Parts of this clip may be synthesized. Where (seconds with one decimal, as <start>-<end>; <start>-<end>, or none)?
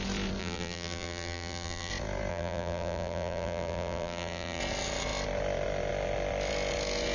0.4-1.9; 2.3-4.6